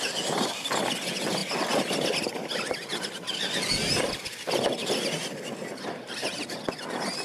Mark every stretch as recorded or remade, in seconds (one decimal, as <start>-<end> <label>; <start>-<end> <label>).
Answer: 0.0-7.2 recorded